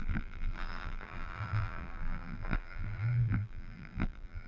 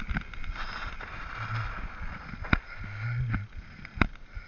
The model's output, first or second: first